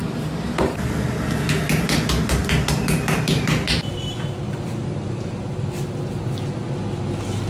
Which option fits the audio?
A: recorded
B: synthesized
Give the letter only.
A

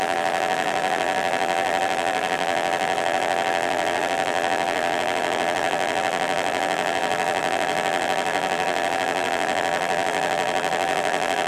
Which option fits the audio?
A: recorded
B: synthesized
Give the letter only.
B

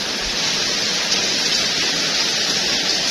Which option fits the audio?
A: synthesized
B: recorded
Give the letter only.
B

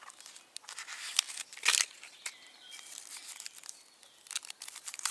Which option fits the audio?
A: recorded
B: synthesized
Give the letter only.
A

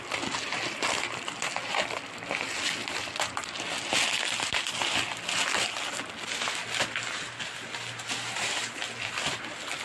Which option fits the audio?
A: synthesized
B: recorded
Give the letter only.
B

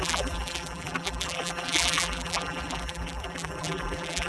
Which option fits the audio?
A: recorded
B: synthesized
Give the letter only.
B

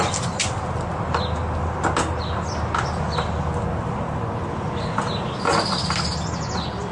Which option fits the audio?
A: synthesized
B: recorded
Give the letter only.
B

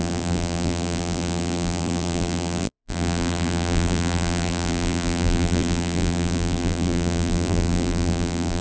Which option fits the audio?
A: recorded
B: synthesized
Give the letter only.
B